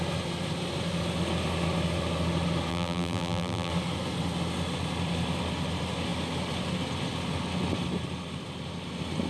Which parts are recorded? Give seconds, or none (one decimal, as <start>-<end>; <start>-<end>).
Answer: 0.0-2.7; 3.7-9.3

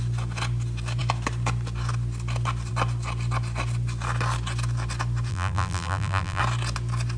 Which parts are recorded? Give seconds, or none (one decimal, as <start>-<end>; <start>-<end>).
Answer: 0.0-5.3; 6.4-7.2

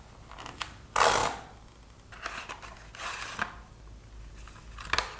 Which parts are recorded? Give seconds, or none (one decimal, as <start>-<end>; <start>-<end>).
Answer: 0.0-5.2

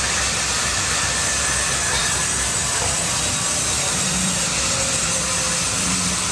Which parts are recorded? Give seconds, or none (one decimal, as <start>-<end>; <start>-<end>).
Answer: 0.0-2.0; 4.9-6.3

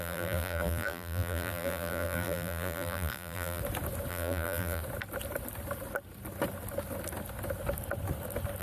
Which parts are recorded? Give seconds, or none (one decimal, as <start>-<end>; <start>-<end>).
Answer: 3.6-4.1; 4.8-8.6

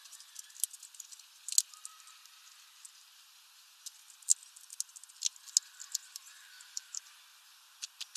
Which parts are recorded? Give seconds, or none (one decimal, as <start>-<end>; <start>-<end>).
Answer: 0.0-6.0; 7.2-8.2

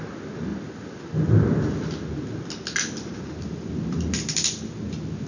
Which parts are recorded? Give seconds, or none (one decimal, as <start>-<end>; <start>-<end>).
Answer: 0.0-5.3